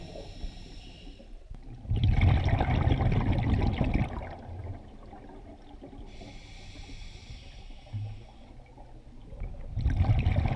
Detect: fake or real real